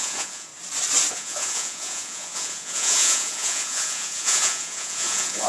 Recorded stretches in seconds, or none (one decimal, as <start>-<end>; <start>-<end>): 0.5-1.1